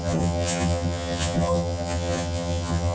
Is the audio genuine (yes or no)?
no